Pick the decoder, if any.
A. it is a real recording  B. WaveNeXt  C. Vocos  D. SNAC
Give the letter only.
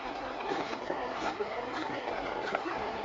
D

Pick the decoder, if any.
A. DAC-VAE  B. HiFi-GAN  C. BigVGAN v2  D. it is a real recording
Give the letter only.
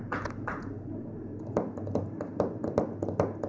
D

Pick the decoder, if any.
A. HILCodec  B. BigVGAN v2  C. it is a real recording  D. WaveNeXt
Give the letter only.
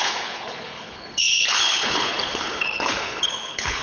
A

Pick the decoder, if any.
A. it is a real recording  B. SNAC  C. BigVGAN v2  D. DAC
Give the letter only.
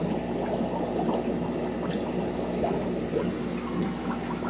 A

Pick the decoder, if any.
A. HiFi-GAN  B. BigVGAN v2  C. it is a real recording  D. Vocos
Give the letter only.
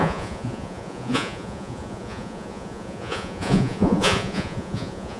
D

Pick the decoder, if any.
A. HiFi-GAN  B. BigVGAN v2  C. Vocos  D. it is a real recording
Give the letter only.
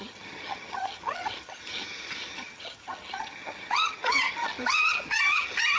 A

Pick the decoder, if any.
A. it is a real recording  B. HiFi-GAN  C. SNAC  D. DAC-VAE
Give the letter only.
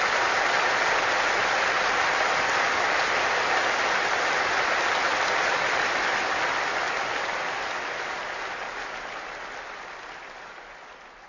A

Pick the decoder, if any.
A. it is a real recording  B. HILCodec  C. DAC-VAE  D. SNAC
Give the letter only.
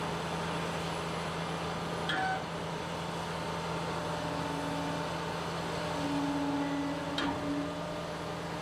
A